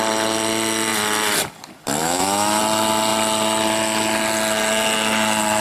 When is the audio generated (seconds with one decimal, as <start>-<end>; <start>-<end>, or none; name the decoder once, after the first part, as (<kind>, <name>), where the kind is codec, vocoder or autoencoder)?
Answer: 2.0-2.6 (autoencoder, DAC-VAE)